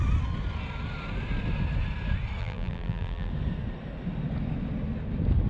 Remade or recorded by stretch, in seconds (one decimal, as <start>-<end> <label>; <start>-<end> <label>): 0.0-2.4 recorded; 2.4-3.3 remade; 3.3-5.5 recorded